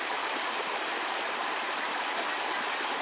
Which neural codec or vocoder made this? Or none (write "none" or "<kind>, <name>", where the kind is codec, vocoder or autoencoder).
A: none